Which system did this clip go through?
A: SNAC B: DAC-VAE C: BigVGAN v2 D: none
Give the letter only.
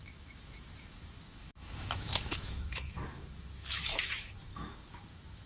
B